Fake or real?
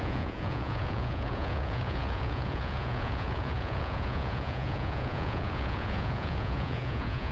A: fake